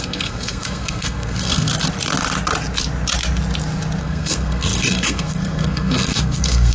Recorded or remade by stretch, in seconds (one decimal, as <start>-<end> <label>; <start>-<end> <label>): 0.0-1.7 remade; 1.7-4.0 recorded; 4.0-6.7 remade